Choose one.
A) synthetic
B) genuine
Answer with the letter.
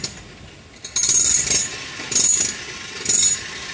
B